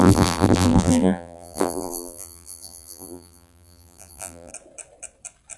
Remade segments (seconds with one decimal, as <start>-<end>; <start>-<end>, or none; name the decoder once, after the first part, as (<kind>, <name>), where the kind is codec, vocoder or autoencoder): 0.0-4.5 (vocoder, BigVGAN v2)